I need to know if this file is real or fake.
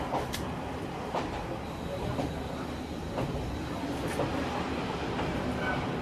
real